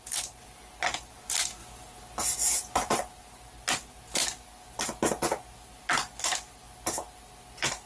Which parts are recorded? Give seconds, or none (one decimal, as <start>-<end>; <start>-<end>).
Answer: 0.0-7.9

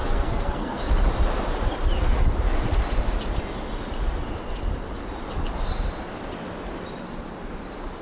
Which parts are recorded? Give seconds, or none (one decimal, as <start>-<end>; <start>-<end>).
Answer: 0.8-8.0

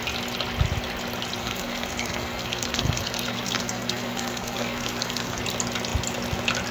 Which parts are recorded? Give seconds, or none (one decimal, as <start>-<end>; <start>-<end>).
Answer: 0.0-1.4; 5.4-6.7